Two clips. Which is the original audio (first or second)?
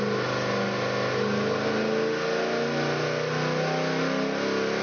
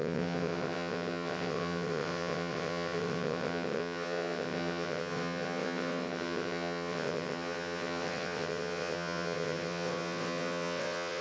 first